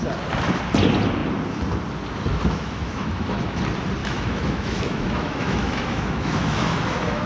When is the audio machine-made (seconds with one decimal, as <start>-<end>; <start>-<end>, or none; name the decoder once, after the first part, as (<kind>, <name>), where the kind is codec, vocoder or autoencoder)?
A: 2.3-3.6 (autoencoder, DAC-VAE); 4.0-7.3